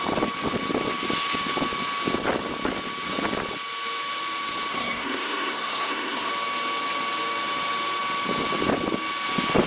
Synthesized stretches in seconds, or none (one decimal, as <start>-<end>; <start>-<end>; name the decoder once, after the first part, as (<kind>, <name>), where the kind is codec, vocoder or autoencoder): 4.7-6.3 (codec, SNAC)